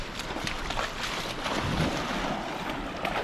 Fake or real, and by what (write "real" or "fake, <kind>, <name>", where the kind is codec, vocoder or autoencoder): real